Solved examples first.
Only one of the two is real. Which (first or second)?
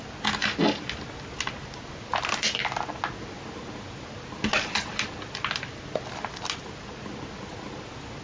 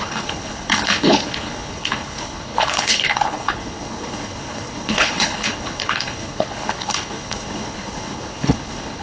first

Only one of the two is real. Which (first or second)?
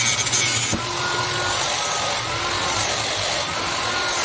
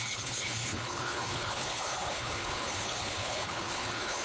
first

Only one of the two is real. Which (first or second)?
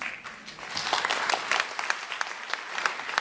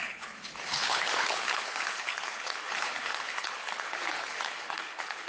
first